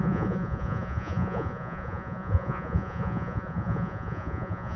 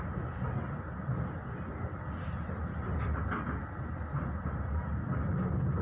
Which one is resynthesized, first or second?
first